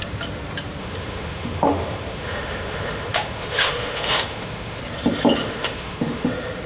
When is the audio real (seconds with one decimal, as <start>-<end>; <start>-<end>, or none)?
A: 0.0-0.8; 4.8-5.4; 6.3-6.7